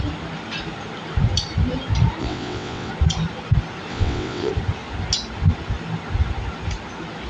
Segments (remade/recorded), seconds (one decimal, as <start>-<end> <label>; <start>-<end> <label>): 0.0-2.2 recorded; 2.2-2.9 remade; 2.9-3.9 recorded; 3.9-4.5 remade; 4.5-7.3 recorded